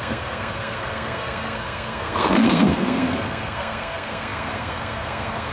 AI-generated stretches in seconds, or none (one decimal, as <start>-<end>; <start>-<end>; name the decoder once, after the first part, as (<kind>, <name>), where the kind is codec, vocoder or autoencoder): 0.0-5.5 (codec, SNAC)